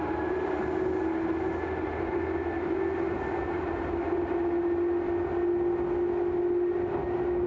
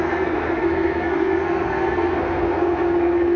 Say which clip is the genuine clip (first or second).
first